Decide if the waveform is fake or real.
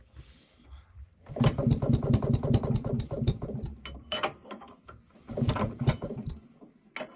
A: real